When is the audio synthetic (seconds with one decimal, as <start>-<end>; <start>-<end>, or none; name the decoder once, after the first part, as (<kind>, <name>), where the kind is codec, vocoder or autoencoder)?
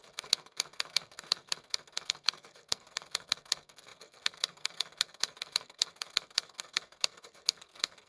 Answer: 0.0-8.1 (codec, SNAC)